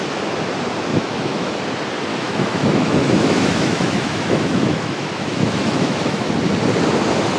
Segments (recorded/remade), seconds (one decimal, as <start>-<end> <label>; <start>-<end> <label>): 0.0-0.9 recorded; 0.9-1.6 remade; 1.6-2.1 recorded; 2.1-6.3 remade; 6.3-7.4 recorded